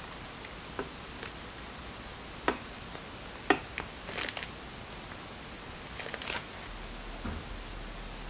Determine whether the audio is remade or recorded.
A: recorded